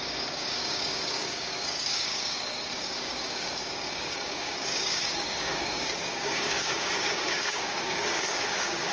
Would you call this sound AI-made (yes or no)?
yes